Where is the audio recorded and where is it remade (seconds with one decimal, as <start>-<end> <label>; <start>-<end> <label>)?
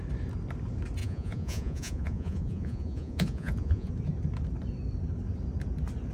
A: 0.0-1.0 recorded; 1.0-3.9 remade; 3.9-6.1 recorded